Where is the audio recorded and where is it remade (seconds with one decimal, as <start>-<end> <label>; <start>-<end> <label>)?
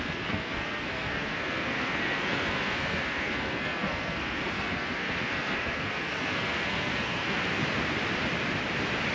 0.0-7.6 remade; 7.6-9.1 recorded